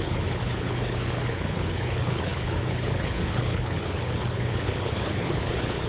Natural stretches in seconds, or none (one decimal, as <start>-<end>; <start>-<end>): none